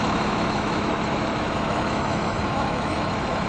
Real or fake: fake